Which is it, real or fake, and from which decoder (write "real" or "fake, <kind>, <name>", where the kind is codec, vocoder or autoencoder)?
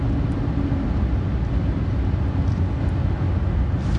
real